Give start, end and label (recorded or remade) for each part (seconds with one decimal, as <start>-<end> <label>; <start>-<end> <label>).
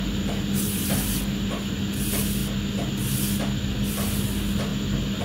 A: 0.0-5.2 recorded